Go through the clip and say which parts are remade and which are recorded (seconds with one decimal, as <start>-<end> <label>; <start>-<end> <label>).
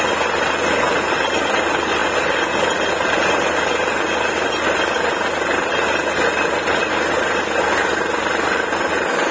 0.0-9.3 recorded